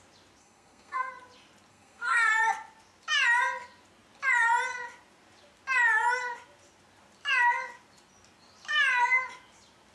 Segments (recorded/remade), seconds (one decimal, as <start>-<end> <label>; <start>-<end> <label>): 0.0-0.4 recorded; 0.4-1.1 remade; 1.1-1.7 recorded; 1.7-2.3 remade; 2.3-9.9 recorded